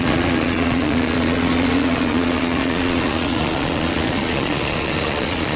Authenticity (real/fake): fake